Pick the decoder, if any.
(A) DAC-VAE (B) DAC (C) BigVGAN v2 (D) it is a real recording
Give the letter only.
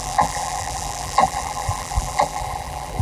C